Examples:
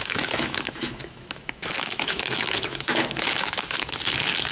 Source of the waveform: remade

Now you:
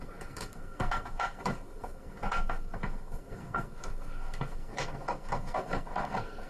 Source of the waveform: remade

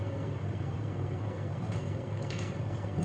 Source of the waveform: remade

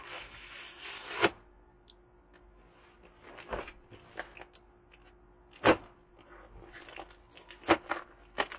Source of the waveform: recorded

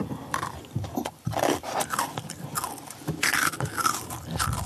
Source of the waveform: remade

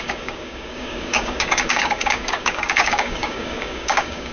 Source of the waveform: remade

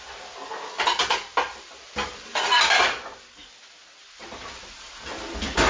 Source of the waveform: recorded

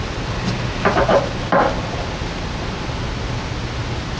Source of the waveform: recorded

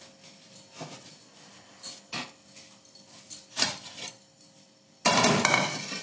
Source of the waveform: recorded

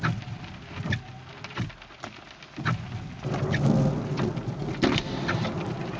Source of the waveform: recorded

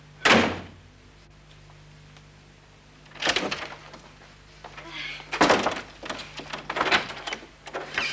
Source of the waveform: recorded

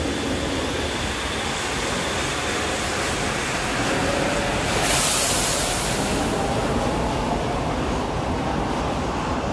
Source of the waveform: recorded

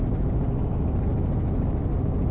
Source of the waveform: recorded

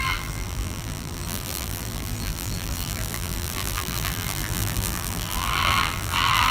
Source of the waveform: remade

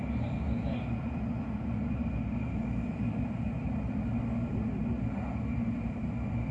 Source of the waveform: recorded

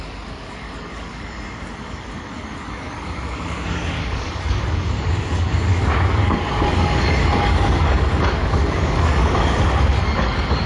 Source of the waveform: remade